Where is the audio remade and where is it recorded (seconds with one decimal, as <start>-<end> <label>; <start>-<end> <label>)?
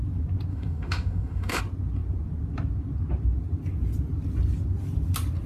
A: 0.0-0.5 recorded; 0.5-1.6 remade; 1.6-5.5 recorded